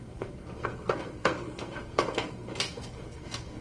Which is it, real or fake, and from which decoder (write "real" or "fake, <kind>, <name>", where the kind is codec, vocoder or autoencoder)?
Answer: fake, codec, SNAC